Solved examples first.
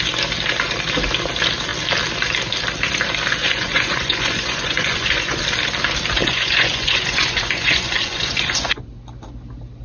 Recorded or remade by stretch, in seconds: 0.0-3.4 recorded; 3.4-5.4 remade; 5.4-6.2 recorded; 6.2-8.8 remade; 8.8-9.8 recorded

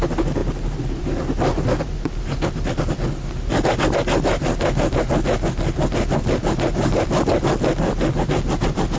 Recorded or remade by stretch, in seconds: 0.0-9.0 recorded

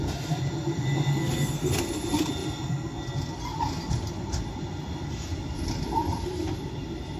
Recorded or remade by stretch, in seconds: 0.0-1.2 recorded; 1.2-1.8 remade; 1.8-7.2 recorded

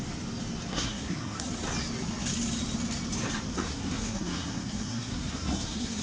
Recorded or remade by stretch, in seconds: 0.0-0.7 recorded; 0.7-1.5 remade; 1.5-3.5 recorded; 3.5-6.0 remade

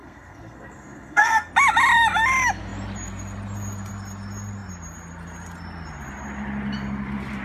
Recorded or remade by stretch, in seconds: 0.0-1.5 remade; 1.5-7.4 recorded